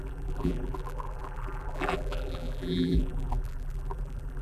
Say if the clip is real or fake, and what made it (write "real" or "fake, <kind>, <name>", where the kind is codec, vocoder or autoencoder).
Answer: fake, vocoder, BigVGAN v2